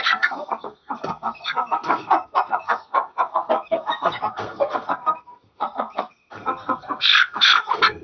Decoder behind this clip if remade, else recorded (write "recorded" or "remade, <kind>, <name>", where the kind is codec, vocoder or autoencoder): remade, codec, SNAC